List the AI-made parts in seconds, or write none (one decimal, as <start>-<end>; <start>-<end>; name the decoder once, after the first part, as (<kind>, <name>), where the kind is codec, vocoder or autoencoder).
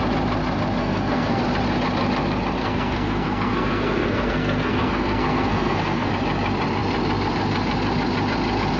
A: 0.8-1.4 (codec, SNAC); 2.6-6.1